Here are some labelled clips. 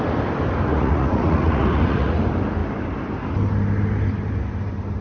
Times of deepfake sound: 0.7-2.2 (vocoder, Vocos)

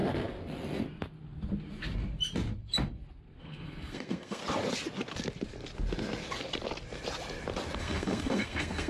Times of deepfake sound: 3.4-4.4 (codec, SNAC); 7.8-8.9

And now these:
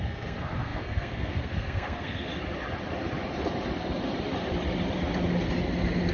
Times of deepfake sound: 0.0-2.3 (codec, SNAC)

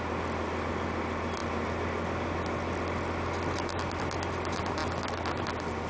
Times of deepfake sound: none

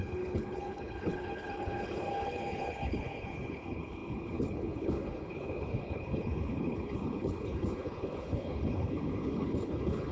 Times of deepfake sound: 0.0-10.1 (codec, HILCodec)

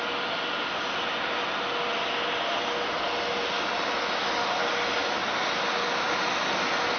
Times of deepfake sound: none

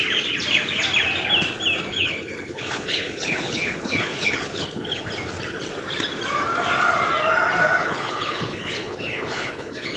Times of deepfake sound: 1.9-5.1 (codec, HILCodec); 7.8-10.0